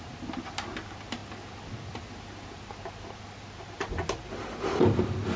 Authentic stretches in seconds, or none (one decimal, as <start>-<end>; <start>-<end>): 0.0-5.4